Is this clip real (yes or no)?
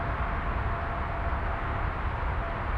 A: yes